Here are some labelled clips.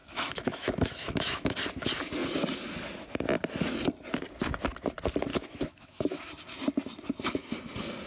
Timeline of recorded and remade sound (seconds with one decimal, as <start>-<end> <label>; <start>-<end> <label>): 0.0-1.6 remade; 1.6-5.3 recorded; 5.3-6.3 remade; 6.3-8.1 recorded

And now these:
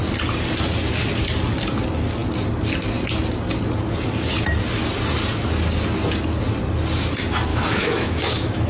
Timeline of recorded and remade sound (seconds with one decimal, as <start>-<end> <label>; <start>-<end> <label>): 0.0-7.5 recorded; 7.5-8.7 remade

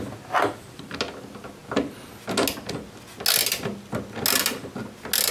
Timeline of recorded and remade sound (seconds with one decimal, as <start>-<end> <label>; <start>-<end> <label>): 0.0-5.3 recorded